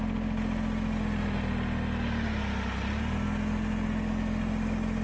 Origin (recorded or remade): recorded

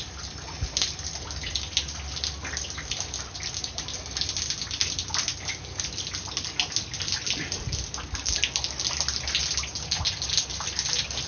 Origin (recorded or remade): recorded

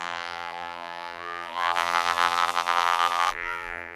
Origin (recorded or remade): remade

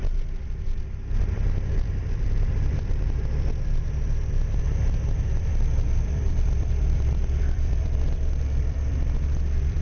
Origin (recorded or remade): remade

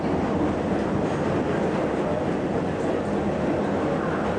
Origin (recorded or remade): recorded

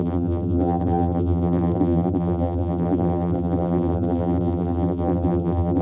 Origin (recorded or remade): remade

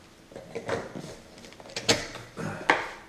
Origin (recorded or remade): recorded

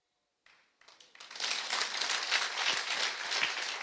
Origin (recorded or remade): recorded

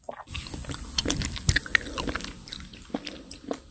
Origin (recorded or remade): recorded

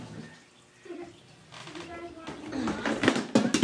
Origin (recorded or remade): recorded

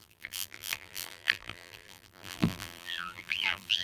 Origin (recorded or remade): remade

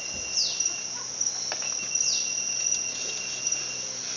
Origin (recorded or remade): recorded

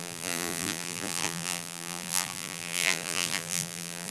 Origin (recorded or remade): remade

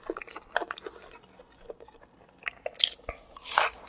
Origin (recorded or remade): recorded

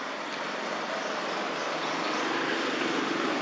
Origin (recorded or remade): recorded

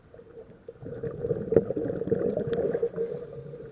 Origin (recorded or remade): recorded